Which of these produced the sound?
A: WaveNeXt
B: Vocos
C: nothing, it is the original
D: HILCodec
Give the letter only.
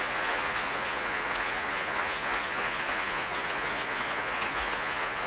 B